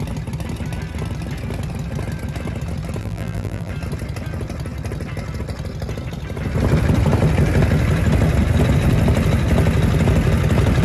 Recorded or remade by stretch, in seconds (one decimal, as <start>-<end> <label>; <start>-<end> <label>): 0.0-3.0 recorded; 3.0-3.7 remade; 3.7-10.8 recorded